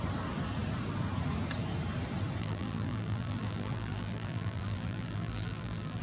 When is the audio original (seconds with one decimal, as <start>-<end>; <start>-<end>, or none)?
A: 0.0-2.4